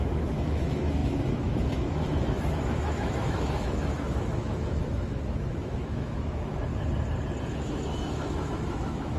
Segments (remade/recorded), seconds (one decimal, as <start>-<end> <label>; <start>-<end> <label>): 0.0-6.7 remade; 6.7-7.4 recorded; 7.4-9.2 remade